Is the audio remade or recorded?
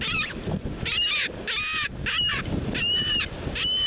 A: recorded